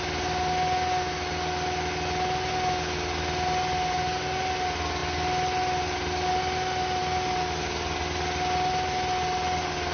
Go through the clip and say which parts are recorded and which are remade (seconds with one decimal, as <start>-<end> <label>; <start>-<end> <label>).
0.0-9.9 recorded